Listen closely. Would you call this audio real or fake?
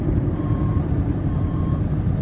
fake